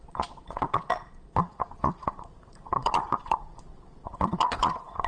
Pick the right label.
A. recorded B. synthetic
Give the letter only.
B